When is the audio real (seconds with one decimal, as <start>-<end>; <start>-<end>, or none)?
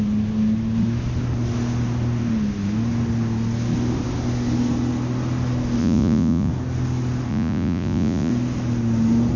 0.0-5.8; 6.5-7.3; 8.3-9.4